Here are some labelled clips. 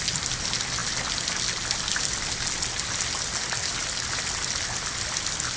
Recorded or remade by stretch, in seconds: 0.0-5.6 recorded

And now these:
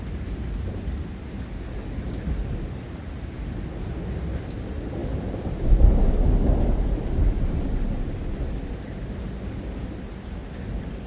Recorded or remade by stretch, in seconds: 0.0-11.1 recorded

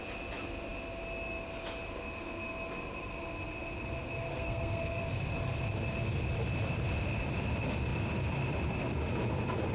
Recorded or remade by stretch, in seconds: 0.0-4.3 recorded; 4.3-5.0 remade; 5.0-9.7 recorded

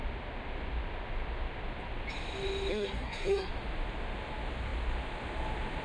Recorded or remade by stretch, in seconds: 0.0-2.7 recorded; 2.7-3.5 remade; 3.5-5.8 recorded